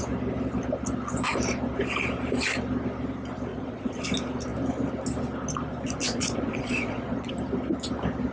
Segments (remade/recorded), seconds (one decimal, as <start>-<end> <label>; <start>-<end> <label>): 0.0-3.5 recorded; 3.5-4.0 remade; 4.0-6.0 recorded; 6.0-7.3 remade; 7.3-8.3 recorded